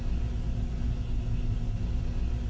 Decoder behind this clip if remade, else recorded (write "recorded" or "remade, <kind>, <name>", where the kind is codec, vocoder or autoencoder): recorded